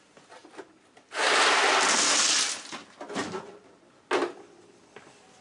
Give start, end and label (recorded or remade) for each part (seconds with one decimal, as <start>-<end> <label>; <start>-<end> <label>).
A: 0.0-3.2 recorded; 3.2-3.8 remade; 3.8-5.4 recorded